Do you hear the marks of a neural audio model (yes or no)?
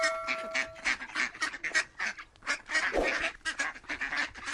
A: no